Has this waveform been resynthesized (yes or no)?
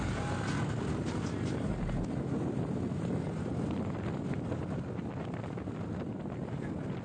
no